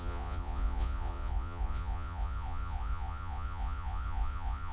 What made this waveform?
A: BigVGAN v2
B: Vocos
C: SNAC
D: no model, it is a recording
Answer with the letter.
B